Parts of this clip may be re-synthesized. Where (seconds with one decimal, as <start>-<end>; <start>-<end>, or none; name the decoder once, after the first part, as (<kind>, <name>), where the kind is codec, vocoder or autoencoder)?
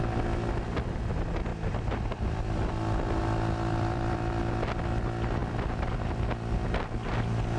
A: 1.5-3.2 (vocoder, BigVGAN v2); 3.7-4.4